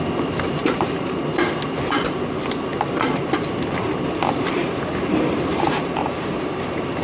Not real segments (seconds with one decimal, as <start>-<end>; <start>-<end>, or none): 0.6-1.2; 2.7-3.5; 5.5-6.5